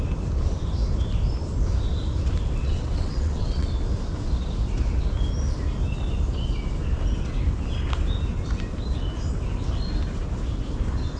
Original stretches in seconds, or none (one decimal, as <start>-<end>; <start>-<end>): 0.0-2.6; 3.7-11.2